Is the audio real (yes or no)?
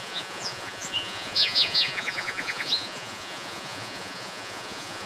no